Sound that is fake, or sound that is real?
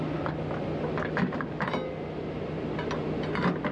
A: real